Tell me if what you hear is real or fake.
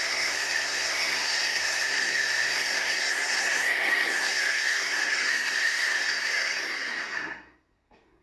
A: fake